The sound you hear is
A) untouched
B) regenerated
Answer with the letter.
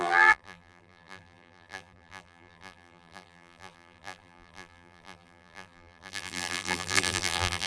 B